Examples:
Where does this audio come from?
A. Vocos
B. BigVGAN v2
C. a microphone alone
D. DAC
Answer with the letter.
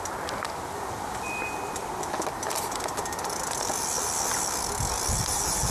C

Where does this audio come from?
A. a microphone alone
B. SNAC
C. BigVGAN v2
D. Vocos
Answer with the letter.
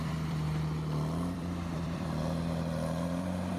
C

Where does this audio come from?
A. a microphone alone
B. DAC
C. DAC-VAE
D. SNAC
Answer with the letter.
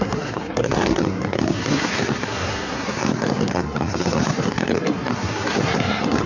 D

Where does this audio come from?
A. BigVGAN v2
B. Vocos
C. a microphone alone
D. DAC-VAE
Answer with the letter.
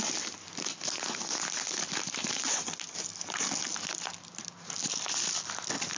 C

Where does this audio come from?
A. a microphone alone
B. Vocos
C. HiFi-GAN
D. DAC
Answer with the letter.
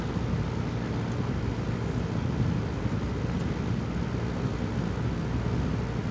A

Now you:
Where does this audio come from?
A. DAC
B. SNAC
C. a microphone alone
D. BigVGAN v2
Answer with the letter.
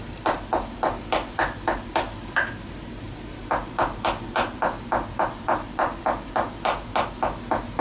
C